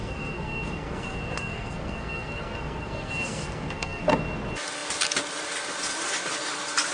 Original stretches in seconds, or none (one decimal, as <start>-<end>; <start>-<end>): 4.1-6.9